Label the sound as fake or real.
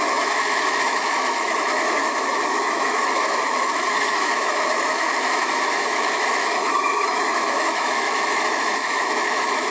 fake